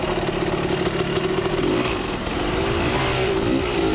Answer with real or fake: real